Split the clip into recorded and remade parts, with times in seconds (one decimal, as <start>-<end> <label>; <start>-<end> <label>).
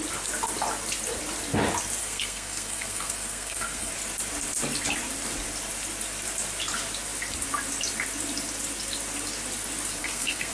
0.0-2.0 recorded; 2.0-3.9 remade; 3.9-10.0 recorded; 10.0-10.5 remade